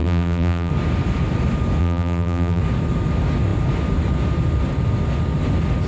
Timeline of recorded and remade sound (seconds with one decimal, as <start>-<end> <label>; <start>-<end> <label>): 0.0-0.7 remade; 0.7-1.8 recorded; 1.8-2.6 remade; 2.6-5.9 recorded